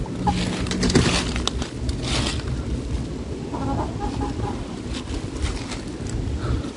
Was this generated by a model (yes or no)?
no